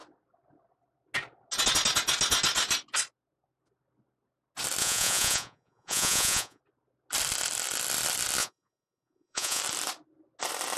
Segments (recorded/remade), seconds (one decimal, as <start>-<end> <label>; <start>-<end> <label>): 0.0-4.8 recorded; 4.8-6.6 remade; 6.6-8.4 recorded; 8.4-9.6 remade; 9.6-10.8 recorded